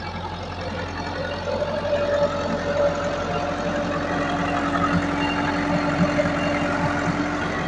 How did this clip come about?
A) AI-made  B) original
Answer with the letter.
B